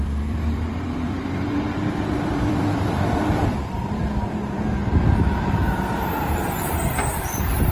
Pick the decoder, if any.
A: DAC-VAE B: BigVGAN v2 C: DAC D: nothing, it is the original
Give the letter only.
B